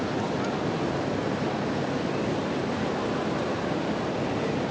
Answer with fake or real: real